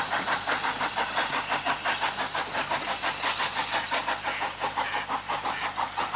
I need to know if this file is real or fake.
real